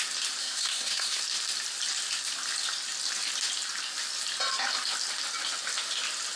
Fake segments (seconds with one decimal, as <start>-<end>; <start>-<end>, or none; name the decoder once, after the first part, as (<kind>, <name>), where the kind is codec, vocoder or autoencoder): 0.4-1.2 (codec, SNAC)